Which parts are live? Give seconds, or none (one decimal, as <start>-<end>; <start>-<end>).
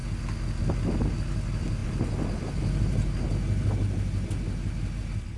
0.0-5.4